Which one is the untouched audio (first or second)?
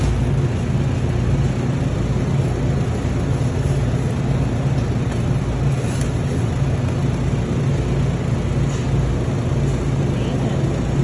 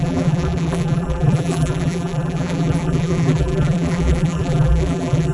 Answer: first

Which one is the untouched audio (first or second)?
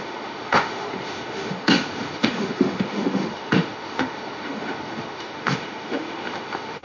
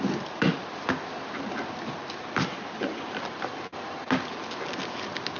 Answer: second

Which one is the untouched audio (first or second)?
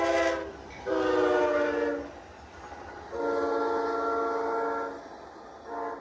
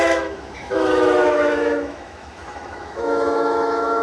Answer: first